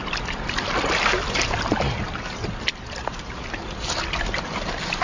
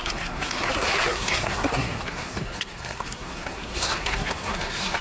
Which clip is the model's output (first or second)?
second